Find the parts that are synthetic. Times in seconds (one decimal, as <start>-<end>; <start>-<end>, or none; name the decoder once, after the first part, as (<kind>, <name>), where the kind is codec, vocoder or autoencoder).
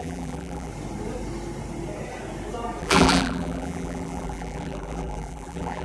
0.0-0.7 (vocoder, BigVGAN v2); 2.8-5.8